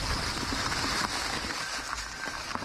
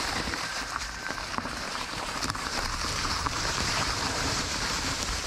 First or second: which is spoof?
second